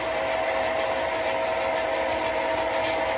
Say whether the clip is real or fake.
real